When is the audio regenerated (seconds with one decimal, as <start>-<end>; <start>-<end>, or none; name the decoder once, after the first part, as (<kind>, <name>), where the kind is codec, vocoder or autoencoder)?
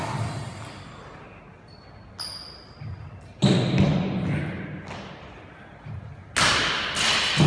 none